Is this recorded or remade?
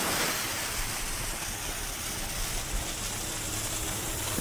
recorded